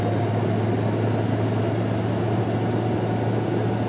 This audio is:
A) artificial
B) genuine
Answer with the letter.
B